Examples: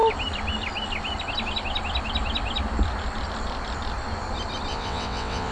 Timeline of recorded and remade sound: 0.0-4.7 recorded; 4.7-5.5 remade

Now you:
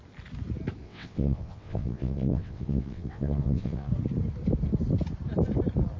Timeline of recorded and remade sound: 0.0-0.8 recorded; 0.8-3.9 remade; 3.9-6.0 recorded

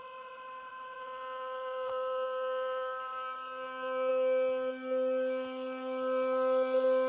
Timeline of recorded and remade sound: 0.0-4.1 remade; 4.1-7.1 recorded

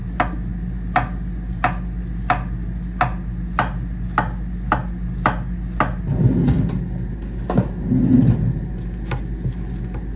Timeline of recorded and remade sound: 0.0-10.2 recorded